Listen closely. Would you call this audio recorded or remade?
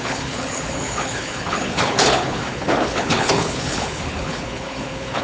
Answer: remade